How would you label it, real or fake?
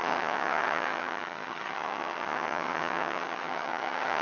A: fake